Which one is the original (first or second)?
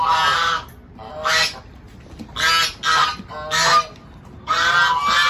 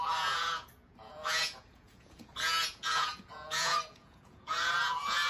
first